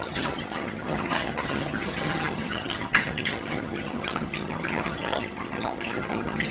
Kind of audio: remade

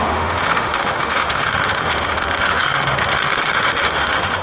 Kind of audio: remade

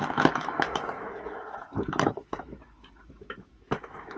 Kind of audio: remade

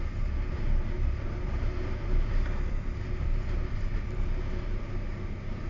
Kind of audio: recorded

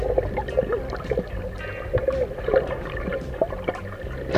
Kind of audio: recorded